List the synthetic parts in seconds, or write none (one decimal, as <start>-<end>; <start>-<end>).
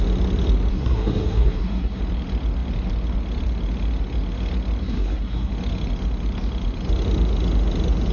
0.7-2.0; 4.8-5.5